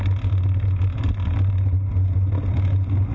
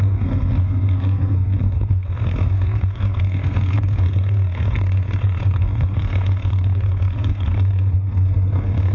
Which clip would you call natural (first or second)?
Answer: first